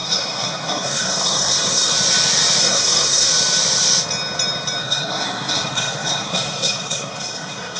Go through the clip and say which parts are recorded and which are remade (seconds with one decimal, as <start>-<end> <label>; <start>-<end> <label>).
0.0-1.9 remade; 1.9-2.6 recorded; 2.6-3.3 remade; 3.3-4.8 recorded; 4.8-7.8 remade